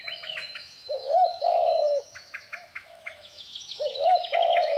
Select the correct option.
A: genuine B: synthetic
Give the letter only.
B